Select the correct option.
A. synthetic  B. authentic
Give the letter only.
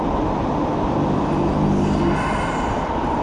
B